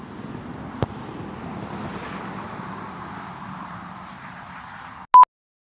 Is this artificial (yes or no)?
no